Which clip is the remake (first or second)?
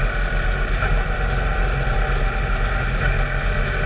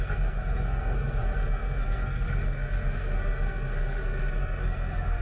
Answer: second